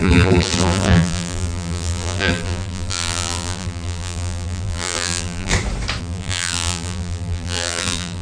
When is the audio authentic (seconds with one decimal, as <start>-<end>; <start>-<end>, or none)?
5.5-6.0